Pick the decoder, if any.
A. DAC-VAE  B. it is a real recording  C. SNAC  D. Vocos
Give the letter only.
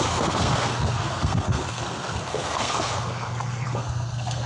C